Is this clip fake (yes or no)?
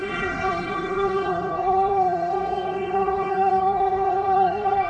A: yes